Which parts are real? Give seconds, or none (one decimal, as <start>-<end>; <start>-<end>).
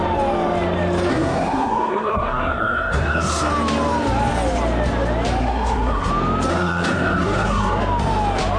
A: 0.0-1.1; 3.5-5.4; 6.1-6.5; 7.8-8.6